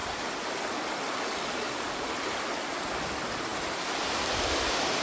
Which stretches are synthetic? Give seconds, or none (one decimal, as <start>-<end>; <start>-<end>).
3.0-3.5; 4.2-5.0